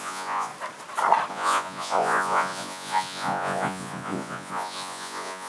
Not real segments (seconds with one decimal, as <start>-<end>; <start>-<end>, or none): 0.0-0.5; 1.3-5.5